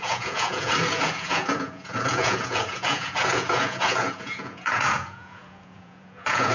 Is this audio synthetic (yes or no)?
yes